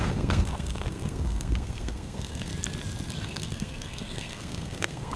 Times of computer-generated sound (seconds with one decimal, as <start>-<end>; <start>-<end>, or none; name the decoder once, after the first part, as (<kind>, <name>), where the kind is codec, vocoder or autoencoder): 0.0-2.5 (codec, SNAC); 3.2-5.2